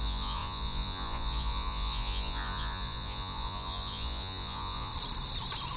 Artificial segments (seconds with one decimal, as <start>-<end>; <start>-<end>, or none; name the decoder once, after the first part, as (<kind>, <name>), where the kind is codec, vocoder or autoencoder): 0.0-4.9 (vocoder, Vocos)